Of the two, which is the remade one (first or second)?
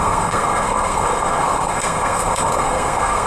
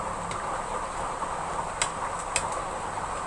first